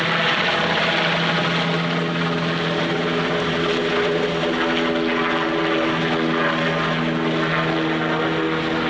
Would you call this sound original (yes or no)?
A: yes